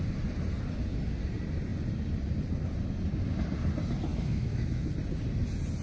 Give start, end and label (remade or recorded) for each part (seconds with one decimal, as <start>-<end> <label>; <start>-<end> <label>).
0.0-4.1 recorded; 4.1-4.9 remade; 4.9-5.8 recorded